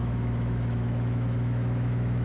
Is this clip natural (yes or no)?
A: no